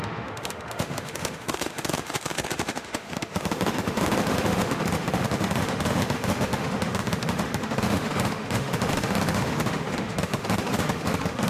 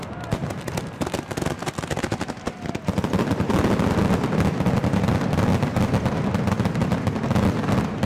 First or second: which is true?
second